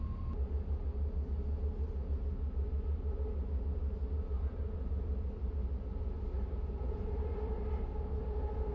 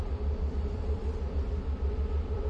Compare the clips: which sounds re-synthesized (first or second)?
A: second